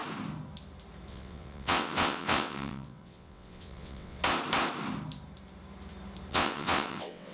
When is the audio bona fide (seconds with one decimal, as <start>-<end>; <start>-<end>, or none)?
0.0-1.1; 4.2-6.3